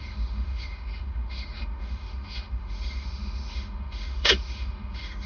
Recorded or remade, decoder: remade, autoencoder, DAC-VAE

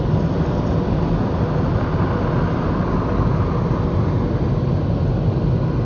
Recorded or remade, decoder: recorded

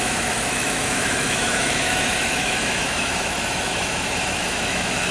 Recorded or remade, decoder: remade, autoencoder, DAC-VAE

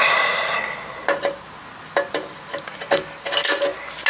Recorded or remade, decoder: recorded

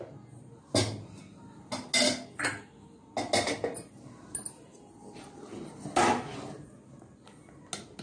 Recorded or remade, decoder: recorded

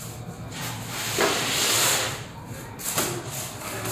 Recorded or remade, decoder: recorded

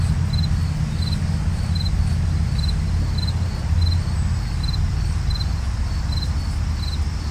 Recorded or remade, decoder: recorded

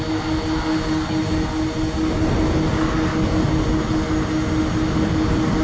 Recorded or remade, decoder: recorded